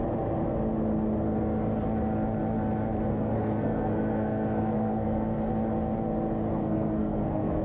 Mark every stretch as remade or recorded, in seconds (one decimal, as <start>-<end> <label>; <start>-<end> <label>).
0.0-3.1 recorded; 3.1-5.5 remade; 5.5-6.6 recorded; 6.6-7.6 remade